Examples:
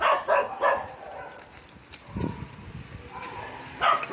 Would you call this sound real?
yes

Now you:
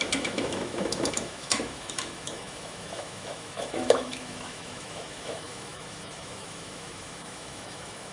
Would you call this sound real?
no